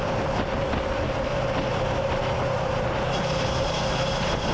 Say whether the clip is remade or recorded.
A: recorded